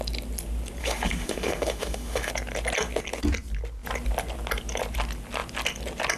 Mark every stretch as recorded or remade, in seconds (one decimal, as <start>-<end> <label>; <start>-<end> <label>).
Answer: 0.0-0.8 recorded; 0.8-2.3 remade; 2.3-6.2 recorded